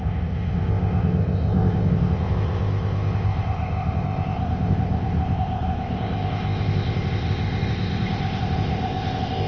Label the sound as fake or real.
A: fake